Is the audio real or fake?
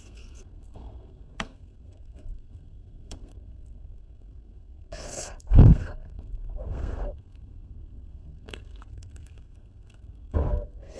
fake